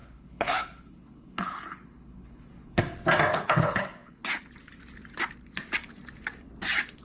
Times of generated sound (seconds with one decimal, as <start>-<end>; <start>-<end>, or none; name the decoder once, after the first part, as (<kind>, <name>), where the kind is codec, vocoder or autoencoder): 0.0-2.8 (codec, HILCodec); 3.3-4.2